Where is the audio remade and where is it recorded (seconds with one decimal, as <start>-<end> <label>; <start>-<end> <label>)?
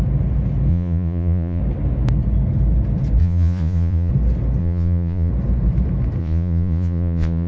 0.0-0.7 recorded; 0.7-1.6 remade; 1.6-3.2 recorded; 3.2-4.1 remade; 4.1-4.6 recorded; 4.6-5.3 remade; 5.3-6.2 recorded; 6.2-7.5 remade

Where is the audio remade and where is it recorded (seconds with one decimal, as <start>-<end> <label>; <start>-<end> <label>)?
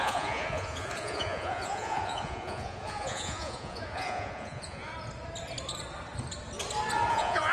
0.0-4.9 remade; 4.9-7.1 recorded; 7.1-7.5 remade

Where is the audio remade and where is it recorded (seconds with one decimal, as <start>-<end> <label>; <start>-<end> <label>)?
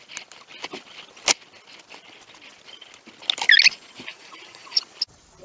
0.0-4.1 recorded; 4.1-4.8 remade; 4.8-5.4 recorded